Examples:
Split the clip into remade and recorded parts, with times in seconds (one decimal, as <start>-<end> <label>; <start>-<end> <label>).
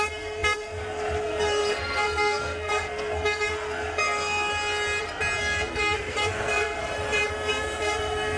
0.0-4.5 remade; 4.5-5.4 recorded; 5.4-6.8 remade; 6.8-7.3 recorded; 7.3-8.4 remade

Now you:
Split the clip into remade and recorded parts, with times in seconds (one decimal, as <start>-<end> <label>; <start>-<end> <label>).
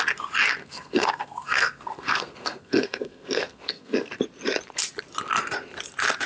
0.0-0.6 recorded; 0.6-4.1 remade; 4.1-6.3 recorded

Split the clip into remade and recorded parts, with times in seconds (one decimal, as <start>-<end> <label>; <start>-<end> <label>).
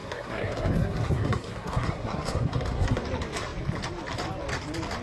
0.0-3.0 remade; 3.0-5.0 recorded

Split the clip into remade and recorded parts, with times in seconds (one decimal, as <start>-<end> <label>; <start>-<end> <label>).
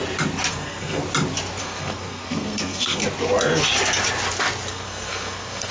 0.0-0.5 recorded; 0.5-1.0 remade; 1.0-1.6 recorded; 1.6-3.0 remade; 3.0-4.7 recorded; 4.7-5.7 remade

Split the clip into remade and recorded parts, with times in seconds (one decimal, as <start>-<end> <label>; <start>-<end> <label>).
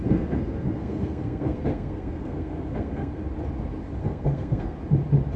0.0-3.2 remade; 3.2-4.0 recorded; 4.0-4.8 remade; 4.8-5.4 recorded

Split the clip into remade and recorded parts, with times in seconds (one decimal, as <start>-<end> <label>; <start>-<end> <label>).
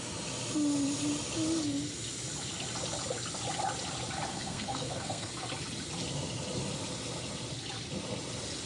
0.0-4.3 recorded; 4.3-5.3 remade; 5.3-8.7 recorded